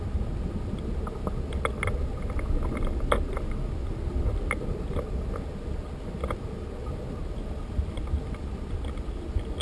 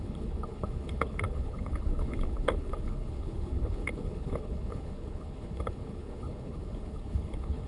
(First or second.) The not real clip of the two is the second